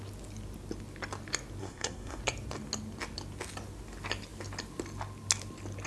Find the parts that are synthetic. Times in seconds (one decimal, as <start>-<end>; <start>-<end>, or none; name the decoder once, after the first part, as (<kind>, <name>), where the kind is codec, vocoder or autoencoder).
1.6-2.2 (codec, SNAC)